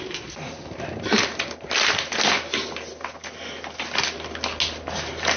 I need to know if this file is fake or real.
real